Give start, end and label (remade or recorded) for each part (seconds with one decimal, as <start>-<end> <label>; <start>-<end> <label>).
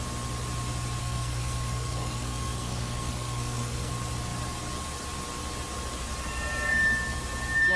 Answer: 0.0-1.0 recorded; 1.0-3.9 remade; 3.9-7.8 recorded